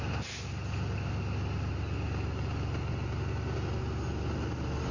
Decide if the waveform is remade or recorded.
recorded